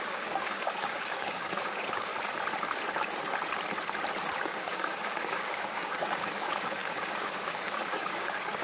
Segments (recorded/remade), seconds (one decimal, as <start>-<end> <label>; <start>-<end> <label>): 0.0-2.1 remade; 2.1-4.4 recorded; 4.4-8.6 remade